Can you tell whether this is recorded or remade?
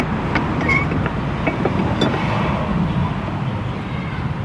recorded